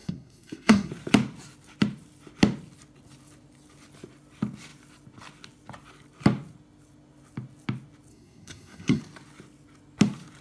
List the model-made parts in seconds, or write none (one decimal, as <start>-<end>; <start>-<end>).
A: 0.0-0.9; 8.1-9.0